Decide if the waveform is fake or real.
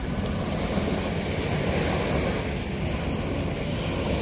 real